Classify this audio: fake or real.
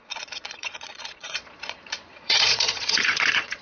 fake